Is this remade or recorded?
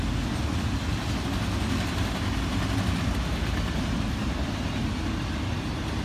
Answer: recorded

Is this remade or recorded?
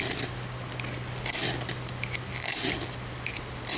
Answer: recorded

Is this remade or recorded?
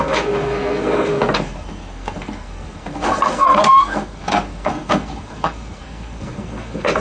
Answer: remade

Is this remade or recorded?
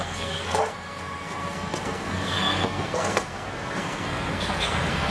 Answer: remade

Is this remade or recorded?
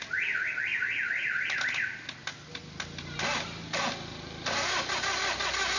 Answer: recorded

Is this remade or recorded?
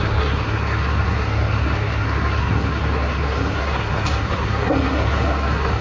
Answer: remade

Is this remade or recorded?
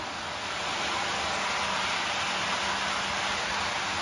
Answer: recorded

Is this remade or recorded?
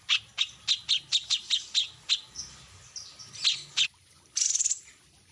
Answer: recorded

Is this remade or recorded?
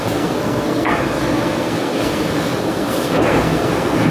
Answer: remade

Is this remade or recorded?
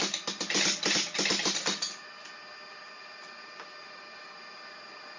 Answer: recorded